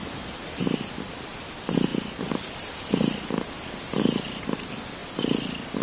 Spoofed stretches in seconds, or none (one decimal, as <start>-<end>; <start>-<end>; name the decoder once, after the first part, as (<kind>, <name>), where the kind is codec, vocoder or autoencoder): 0.0-0.6 (vocoder, BigVGAN v2)